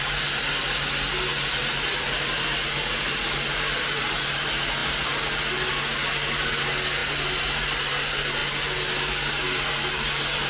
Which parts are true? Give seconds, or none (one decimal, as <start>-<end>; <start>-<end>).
0.0-10.5